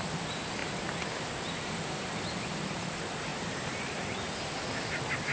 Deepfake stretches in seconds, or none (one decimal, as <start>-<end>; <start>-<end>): 3.3-4.7